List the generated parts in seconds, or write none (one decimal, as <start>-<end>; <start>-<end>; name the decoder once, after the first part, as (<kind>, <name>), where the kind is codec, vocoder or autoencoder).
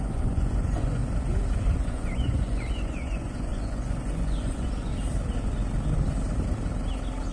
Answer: 0.0-1.0 (vocoder, Vocos); 1.6-4.9